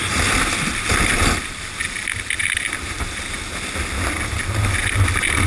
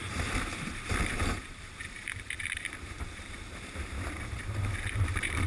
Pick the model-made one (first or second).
second